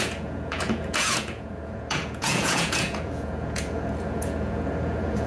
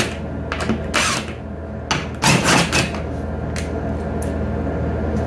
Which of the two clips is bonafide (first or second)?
second